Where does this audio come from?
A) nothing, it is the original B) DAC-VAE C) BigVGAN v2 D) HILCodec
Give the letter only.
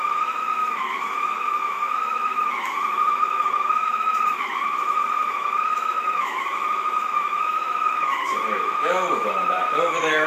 B